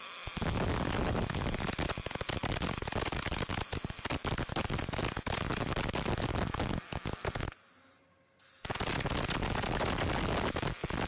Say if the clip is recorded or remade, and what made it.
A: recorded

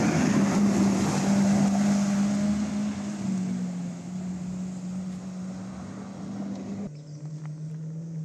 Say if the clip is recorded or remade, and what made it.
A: recorded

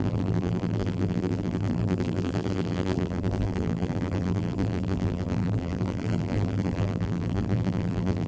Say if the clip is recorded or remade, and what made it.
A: remade, vocoder, BigVGAN v2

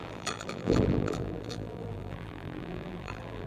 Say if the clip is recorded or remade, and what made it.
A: remade, vocoder, BigVGAN v2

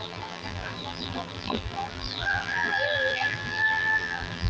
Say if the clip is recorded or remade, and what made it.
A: remade, vocoder, BigVGAN v2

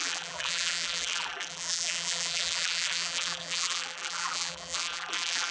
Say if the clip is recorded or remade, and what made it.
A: remade, vocoder, BigVGAN v2